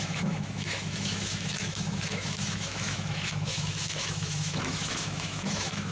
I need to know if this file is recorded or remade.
remade